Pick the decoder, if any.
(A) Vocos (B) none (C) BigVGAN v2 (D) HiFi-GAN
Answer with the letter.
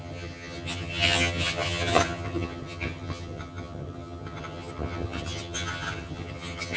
D